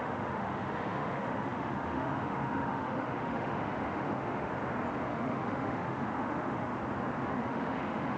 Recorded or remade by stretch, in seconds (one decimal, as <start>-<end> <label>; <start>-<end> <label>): 0.0-4.5 remade; 4.5-5.1 recorded; 5.1-6.7 remade; 6.7-7.3 recorded; 7.3-8.2 remade